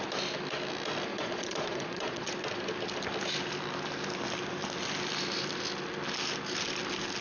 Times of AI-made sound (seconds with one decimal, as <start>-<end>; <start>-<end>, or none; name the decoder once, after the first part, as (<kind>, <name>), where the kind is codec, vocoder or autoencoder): 1.1-2.3 (vocoder, Vocos)